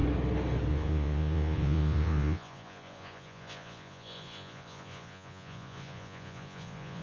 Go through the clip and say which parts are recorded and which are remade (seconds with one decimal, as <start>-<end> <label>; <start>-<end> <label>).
0.0-0.7 recorded; 0.7-7.0 remade